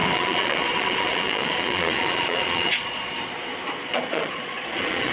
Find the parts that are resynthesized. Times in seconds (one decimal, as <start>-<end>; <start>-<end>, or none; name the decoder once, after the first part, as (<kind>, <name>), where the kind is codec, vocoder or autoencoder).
0.0-3.1 (vocoder, Vocos); 3.9-5.1